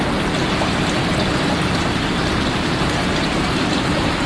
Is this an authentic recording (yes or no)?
no